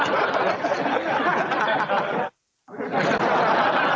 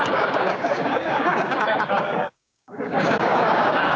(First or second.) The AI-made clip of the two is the second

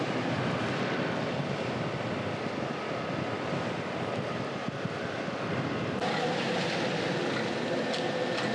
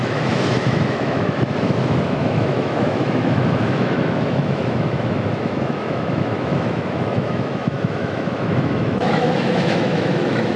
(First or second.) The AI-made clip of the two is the second